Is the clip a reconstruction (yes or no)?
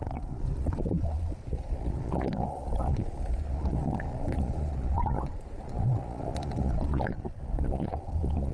yes